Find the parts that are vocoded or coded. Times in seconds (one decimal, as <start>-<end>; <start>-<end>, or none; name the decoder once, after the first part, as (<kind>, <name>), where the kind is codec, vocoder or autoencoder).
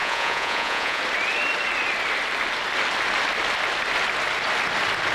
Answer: 0.0-1.0 (vocoder, Vocos)